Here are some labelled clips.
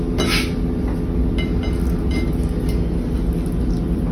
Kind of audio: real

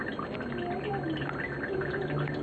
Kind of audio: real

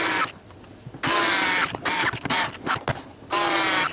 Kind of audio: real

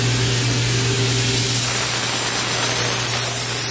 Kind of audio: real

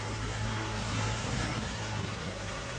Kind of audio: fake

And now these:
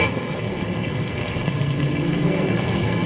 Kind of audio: fake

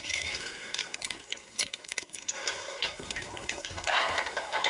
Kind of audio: fake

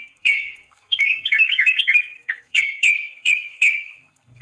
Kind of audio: fake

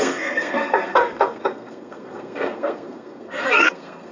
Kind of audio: fake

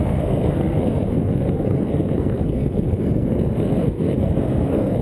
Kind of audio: fake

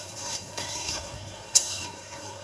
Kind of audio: fake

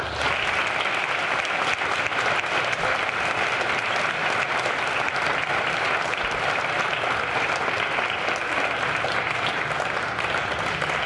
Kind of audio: real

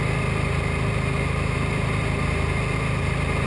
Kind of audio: real